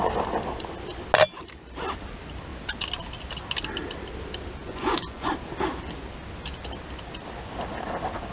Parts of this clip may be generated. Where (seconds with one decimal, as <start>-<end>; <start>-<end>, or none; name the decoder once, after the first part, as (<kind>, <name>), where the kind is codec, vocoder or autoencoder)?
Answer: 4.6-5.3 (vocoder, Vocos)